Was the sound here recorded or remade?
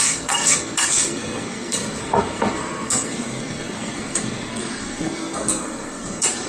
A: remade